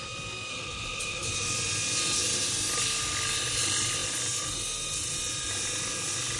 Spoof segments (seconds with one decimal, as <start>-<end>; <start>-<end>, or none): 0.5-1.3